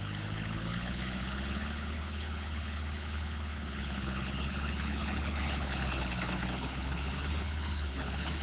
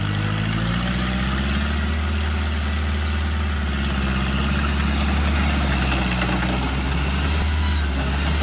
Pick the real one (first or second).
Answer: second